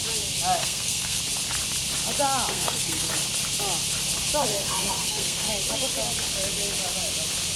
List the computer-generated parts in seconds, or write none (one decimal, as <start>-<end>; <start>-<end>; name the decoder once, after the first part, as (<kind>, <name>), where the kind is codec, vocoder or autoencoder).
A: 0.6-1.2 (codec, SNAC); 2.5-3.1; 4.5-5.5